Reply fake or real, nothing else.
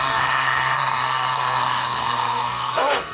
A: fake